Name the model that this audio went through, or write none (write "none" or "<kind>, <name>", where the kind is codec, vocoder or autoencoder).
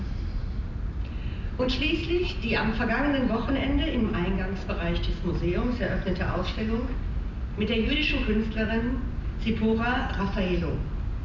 none